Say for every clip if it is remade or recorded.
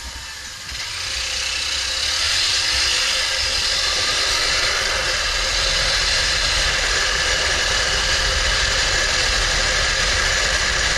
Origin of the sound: recorded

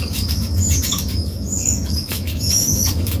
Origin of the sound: remade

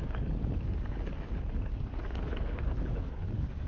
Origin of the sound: remade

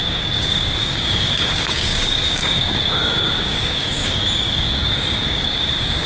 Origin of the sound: remade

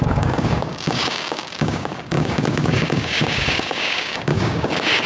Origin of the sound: remade